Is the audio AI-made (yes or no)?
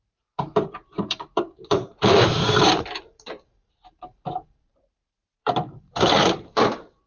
yes